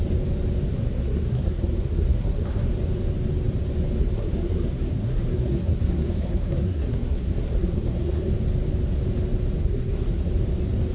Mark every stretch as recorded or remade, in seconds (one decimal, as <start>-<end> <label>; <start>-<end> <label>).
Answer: 0.0-0.7 recorded; 0.7-2.7 remade; 2.7-4.0 recorded; 4.0-8.3 remade; 8.3-9.6 recorded; 9.6-10.3 remade; 10.3-10.9 recorded